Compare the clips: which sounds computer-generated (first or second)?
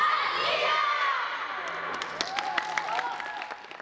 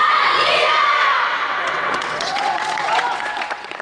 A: second